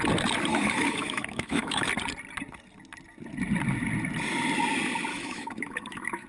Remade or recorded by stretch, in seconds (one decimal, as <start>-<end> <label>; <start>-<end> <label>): 0.0-0.5 recorded; 0.5-1.9 remade; 1.9-5.1 recorded; 5.1-6.3 remade